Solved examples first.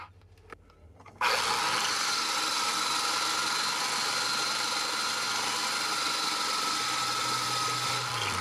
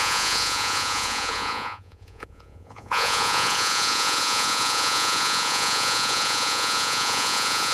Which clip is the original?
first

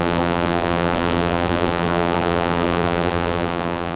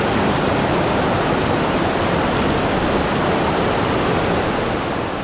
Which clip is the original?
second